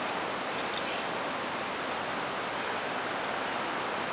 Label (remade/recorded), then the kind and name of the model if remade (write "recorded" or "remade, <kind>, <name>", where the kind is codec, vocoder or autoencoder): recorded